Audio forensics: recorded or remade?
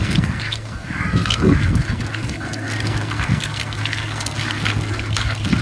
remade